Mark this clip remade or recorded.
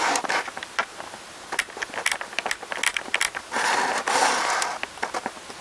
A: recorded